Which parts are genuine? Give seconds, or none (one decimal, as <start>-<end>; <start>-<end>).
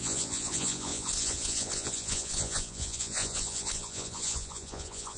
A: none